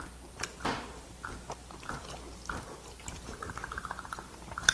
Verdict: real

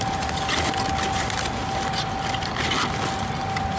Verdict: real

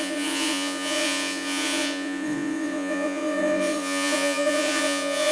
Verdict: fake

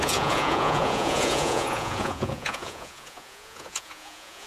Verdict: fake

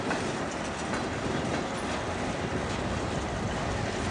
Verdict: real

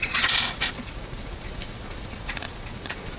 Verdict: fake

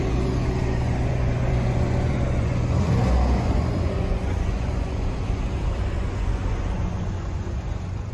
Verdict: fake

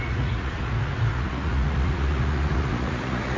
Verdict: fake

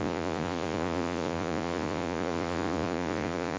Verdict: fake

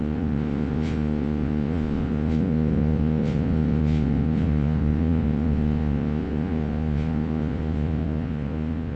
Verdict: fake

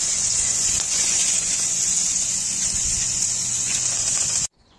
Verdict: fake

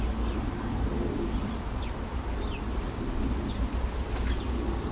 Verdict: real